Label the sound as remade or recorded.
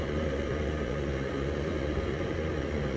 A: remade